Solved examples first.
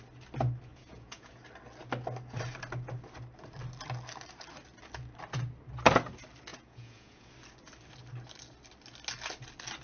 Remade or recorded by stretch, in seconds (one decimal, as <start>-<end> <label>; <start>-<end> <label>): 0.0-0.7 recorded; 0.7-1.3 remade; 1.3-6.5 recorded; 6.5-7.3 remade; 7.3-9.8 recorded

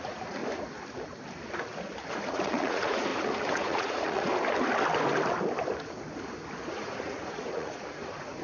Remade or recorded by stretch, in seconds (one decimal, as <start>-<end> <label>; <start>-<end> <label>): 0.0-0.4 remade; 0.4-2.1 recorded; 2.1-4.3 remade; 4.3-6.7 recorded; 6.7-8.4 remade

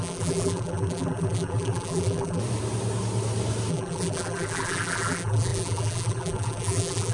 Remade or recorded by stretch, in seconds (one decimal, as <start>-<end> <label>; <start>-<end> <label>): 0.0-2.4 remade; 2.4-3.7 recorded; 3.7-7.1 remade

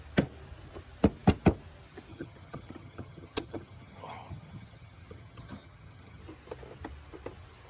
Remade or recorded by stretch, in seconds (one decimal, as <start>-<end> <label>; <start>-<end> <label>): 0.0-2.1 recorded; 2.1-6.2 remade; 6.2-7.7 recorded

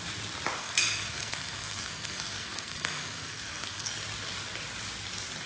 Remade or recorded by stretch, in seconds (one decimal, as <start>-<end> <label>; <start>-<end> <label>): 0.0-0.6 recorded; 0.6-3.9 remade; 3.9-5.5 recorded

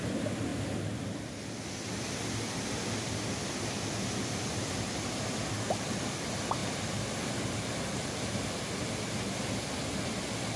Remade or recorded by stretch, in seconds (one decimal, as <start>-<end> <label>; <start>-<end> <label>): 0.0-6.6 recorded; 6.6-8.9 remade; 8.9-10.6 recorded

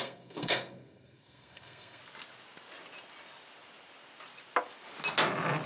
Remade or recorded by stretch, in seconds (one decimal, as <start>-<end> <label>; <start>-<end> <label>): 0.0-2.0 remade; 2.0-5.7 recorded

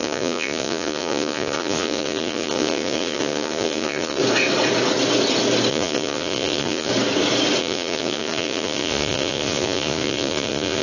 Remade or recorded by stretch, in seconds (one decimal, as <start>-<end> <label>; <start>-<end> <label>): 0.0-4.2 remade; 4.2-5.7 recorded; 5.7-6.9 remade; 6.9-7.6 recorded; 7.6-10.8 remade